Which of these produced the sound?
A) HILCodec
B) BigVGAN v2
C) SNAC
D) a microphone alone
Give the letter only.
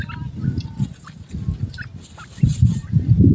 D